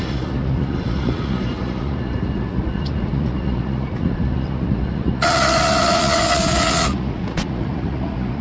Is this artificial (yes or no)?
yes